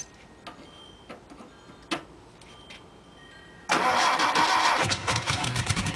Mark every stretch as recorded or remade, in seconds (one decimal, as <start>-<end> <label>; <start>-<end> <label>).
0.0-4.8 recorded; 4.8-6.0 remade